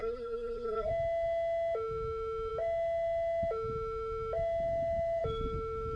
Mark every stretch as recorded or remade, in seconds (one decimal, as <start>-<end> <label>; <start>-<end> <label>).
0.0-0.9 remade; 0.9-6.0 recorded